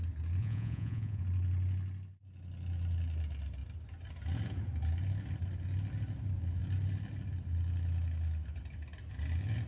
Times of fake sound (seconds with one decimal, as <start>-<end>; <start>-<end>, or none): 0.4-1.2